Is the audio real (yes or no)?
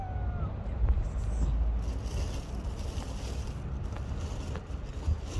yes